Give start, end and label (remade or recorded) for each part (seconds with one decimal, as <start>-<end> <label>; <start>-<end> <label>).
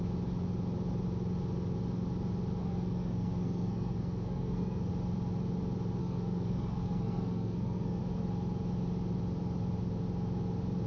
0.0-2.6 recorded; 2.6-4.9 remade; 4.9-6.0 recorded; 6.0-8.0 remade; 8.0-10.9 recorded